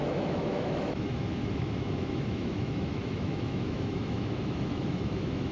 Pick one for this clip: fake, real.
fake